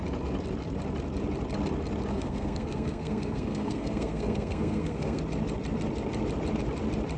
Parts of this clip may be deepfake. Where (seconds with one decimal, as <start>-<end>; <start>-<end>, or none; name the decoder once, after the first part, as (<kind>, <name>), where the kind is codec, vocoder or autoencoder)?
2.1-5.2 (codec, SNAC)